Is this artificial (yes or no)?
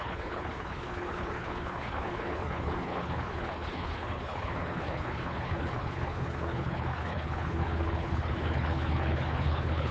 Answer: yes